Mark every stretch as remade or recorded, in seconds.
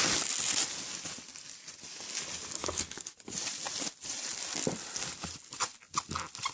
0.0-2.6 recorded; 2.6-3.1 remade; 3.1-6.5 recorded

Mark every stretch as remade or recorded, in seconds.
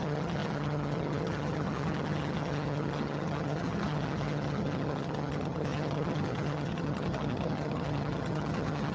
0.0-8.9 remade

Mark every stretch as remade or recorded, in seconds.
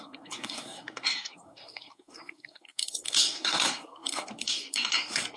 0.0-5.4 remade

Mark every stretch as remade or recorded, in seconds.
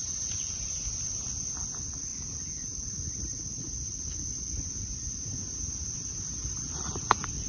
0.0-0.6 remade; 0.6-6.1 recorded; 6.1-7.0 remade; 7.0-7.5 recorded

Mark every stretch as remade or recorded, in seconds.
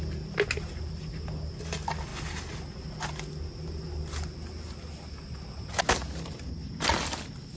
0.0-7.6 recorded